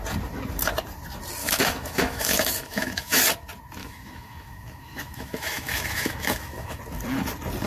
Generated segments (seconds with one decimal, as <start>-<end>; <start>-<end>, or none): 1.4-3.2; 3.8-6.8